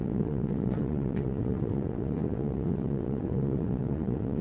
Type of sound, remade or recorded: remade